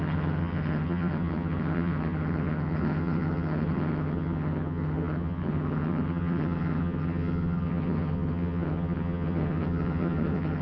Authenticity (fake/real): fake